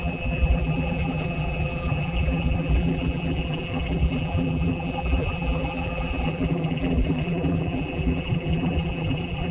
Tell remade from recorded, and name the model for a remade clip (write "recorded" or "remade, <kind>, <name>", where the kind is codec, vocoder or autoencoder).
remade, vocoder, BigVGAN v2